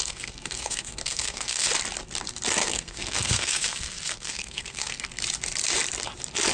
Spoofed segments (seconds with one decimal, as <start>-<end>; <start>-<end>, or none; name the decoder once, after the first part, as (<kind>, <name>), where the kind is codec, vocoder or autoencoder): 0.0-1.7 (codec, SNAC); 2.6-5.1

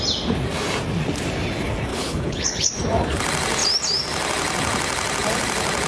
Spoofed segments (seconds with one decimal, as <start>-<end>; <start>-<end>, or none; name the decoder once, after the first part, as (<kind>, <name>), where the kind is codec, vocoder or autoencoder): 1.9-2.7 (codec, HILCodec)

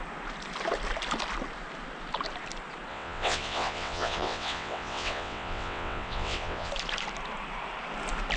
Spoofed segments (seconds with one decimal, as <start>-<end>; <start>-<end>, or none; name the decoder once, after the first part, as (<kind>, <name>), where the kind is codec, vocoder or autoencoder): 2.9-6.7 (vocoder, WaveNeXt)

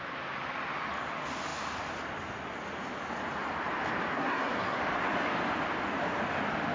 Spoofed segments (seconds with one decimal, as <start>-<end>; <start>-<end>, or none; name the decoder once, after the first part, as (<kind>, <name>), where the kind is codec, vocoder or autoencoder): 4.1-4.8 (codec, SNAC)

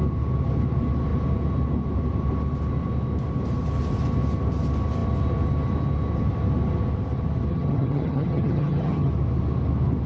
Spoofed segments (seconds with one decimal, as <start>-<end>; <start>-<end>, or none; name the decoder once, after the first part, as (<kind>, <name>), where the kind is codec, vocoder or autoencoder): 7.5-9.1 (vocoder, HiFi-GAN)

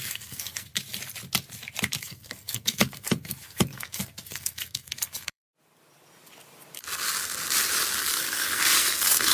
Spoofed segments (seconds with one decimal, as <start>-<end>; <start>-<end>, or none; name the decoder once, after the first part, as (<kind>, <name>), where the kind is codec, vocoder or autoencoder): 0.0-0.7 (codec, SNAC); 2.0-5.5; 8.0-9.3

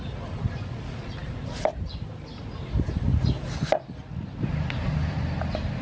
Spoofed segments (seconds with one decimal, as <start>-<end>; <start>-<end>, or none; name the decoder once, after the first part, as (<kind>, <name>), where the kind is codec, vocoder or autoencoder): none